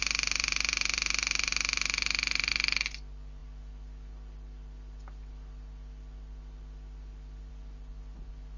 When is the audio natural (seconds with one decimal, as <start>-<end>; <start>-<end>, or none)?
0.0-8.6